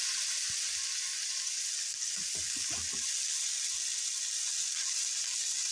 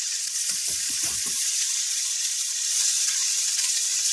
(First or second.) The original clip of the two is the first